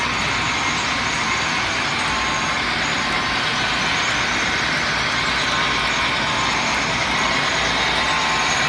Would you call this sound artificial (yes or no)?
no